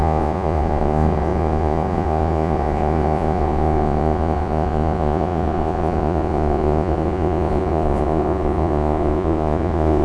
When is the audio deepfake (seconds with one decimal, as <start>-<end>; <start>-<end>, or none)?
0.0-10.0